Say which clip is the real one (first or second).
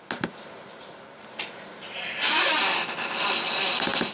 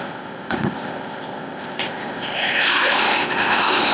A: first